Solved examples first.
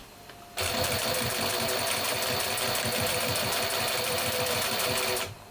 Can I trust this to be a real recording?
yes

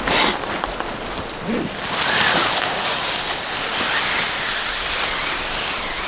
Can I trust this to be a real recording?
yes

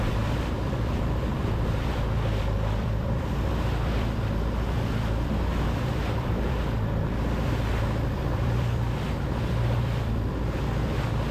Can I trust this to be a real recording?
no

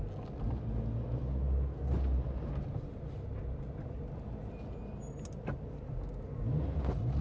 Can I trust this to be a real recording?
yes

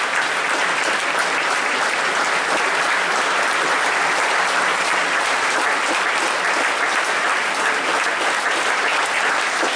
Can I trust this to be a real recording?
no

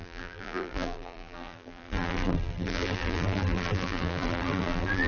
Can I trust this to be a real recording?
no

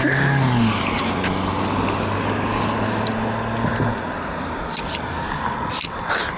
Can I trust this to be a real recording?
yes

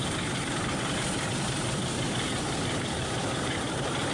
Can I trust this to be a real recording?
no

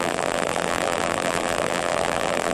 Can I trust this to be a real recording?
no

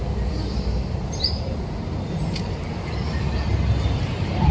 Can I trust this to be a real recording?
no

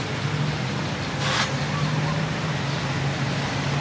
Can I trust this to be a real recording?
yes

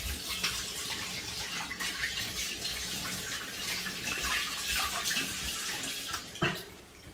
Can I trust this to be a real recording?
no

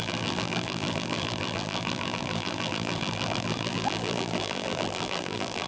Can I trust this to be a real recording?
no